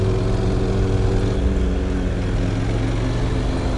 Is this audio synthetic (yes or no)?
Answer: no